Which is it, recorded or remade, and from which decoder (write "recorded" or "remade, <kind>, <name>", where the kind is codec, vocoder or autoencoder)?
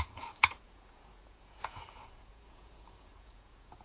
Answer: remade, vocoder, Vocos